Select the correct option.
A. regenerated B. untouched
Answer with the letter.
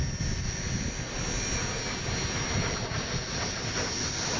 B